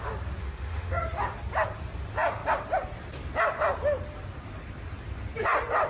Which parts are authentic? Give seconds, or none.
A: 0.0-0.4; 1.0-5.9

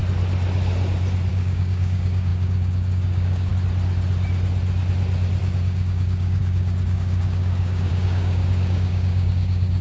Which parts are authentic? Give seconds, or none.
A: 0.0-1.3; 3.5-5.4

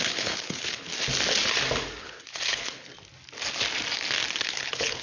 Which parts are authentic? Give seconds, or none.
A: 0.9-2.0; 2.9-4.3

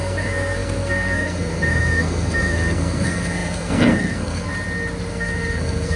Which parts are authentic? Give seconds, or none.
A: 4.5-5.1

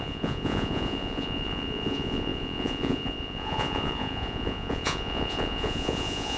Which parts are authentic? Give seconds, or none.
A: none